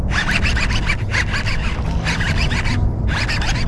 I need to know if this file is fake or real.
real